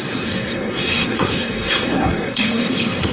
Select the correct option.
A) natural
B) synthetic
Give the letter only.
B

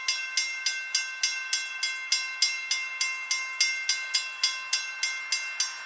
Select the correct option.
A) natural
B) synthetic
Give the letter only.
A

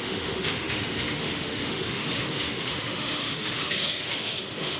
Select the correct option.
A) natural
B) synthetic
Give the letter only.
B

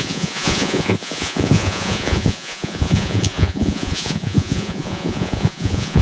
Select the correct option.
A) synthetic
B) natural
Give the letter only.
A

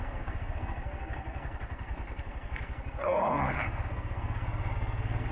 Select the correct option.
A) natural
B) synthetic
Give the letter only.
B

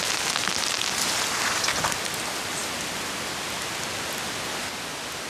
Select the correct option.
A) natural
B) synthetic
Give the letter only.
A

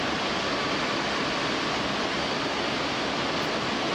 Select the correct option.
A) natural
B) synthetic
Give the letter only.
A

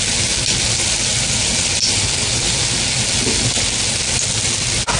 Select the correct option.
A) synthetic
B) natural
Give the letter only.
B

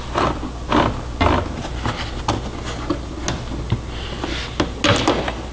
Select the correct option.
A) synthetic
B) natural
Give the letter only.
B